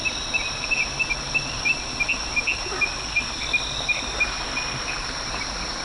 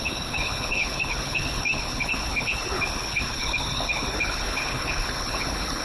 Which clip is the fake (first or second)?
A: second